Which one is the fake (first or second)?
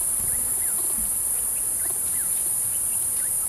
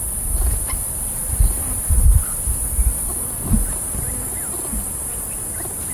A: first